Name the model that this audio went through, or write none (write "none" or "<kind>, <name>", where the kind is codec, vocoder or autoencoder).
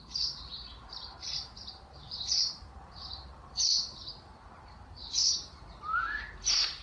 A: vocoder, BigVGAN v2